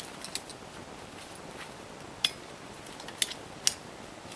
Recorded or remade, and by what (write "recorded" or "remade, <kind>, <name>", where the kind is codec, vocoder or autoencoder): recorded